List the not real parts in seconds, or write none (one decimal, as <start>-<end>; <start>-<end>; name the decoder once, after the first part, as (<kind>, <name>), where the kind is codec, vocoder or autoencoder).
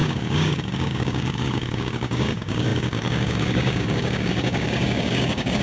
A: 0.0-5.6 (codec, DAC)